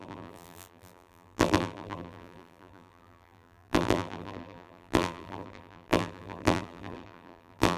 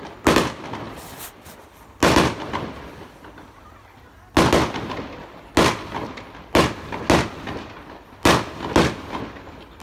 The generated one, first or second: first